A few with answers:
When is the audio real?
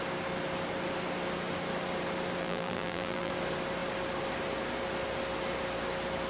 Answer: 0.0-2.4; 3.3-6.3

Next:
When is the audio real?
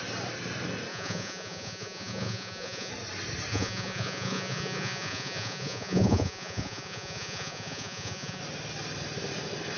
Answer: 0.0-0.9; 2.9-3.5; 8.4-9.8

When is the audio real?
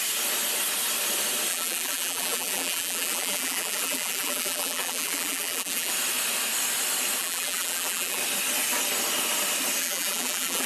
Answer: 0.0-1.5; 5.9-7.2; 8.2-9.8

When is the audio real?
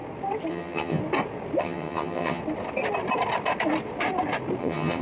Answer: 0.0-0.5; 1.0-1.6; 2.4-4.6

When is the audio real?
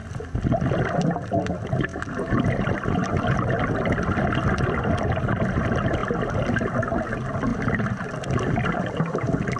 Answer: 0.0-0.7; 1.9-4.8; 6.0-6.7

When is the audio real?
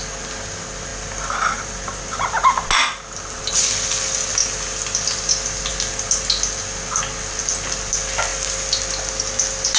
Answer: 0.0-9.8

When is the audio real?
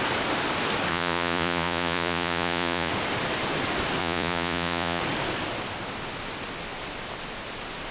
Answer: 0.0-0.9; 2.9-4.0; 5.0-7.9